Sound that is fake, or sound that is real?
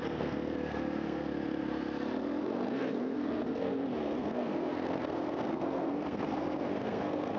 fake